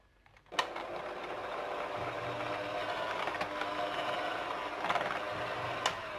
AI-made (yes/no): no